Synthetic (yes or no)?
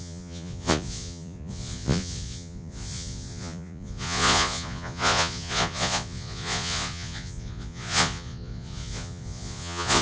yes